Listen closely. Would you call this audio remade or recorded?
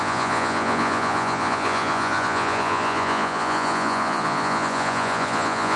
remade